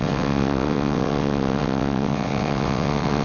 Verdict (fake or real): fake